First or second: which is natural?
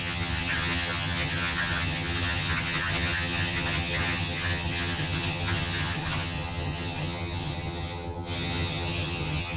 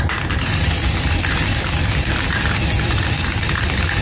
second